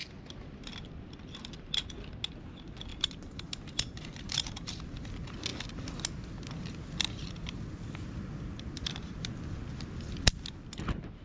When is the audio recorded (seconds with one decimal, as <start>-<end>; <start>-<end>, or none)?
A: 0.0-2.9; 4.7-11.2

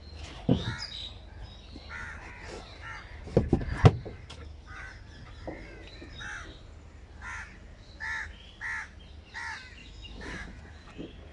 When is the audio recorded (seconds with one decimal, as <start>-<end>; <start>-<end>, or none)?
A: 0.0-9.8; 10.6-11.3